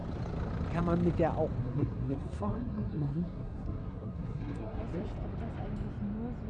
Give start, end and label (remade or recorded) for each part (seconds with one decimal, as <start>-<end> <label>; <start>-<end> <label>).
0.0-1.6 recorded; 1.6-4.8 remade; 4.8-6.5 recorded